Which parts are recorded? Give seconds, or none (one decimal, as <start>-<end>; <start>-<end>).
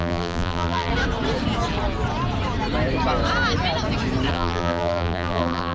0.9-4.3